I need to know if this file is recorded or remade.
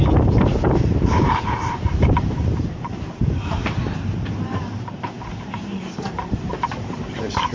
remade